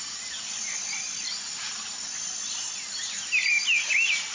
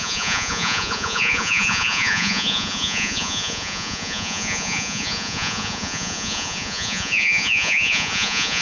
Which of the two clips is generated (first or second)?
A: second